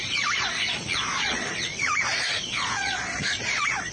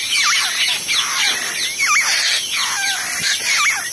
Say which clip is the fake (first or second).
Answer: first